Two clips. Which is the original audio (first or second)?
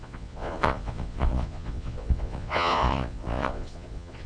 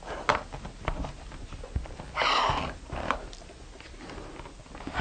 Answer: second